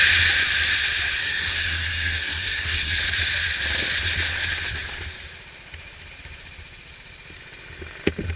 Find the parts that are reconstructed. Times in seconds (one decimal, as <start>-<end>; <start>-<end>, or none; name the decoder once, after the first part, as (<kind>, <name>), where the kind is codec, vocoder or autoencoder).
1.2-3.0 (codec, SNAC)